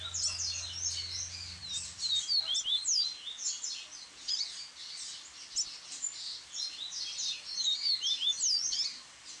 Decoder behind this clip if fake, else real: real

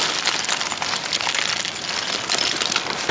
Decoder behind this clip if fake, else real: real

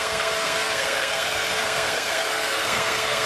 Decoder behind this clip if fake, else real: fake, codec, SNAC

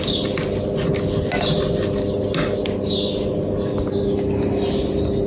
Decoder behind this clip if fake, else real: real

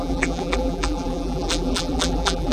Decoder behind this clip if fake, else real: fake, vocoder, BigVGAN v2